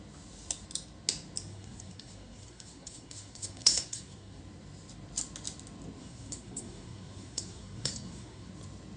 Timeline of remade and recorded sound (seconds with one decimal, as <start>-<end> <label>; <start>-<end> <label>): 0.0-1.5 recorded; 1.5-4.4 remade; 4.4-6.0 recorded; 6.0-8.5 remade; 8.5-9.0 recorded